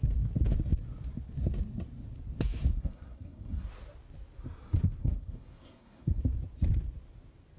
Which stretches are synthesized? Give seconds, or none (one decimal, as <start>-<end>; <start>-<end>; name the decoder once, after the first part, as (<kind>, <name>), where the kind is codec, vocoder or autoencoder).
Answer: 2.7-3.7 (codec, SNAC); 5.0-6.2